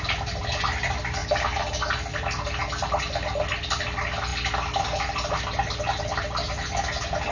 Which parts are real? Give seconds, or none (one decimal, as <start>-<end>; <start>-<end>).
0.0-7.3